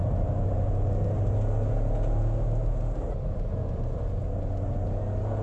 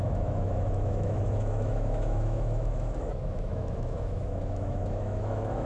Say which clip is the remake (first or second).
second